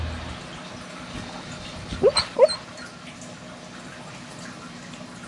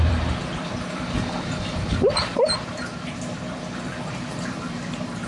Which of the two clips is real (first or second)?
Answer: first